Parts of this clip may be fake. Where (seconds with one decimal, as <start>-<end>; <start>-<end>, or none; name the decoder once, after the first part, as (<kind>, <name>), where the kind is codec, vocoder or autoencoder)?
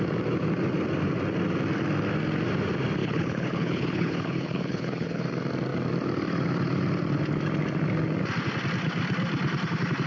3.0-5.2 (codec, HILCodec)